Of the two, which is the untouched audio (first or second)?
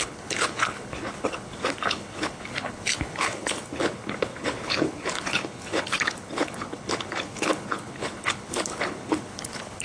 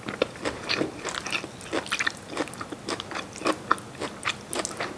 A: second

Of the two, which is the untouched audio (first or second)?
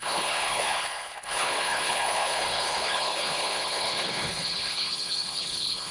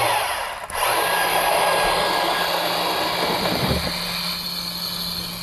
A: second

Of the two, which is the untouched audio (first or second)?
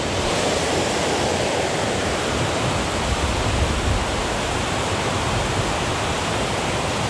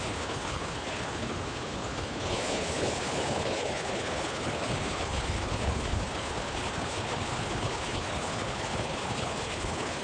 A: first